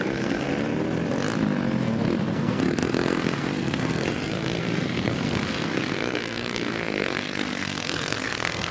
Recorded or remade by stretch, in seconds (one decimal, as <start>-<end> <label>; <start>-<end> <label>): 0.0-0.5 remade; 0.5-2.3 recorded; 2.3-8.7 remade